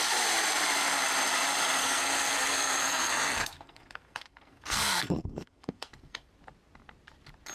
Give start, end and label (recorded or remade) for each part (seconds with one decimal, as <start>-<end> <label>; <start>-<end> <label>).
0.0-1.8 recorded; 1.8-6.3 remade; 6.3-7.5 recorded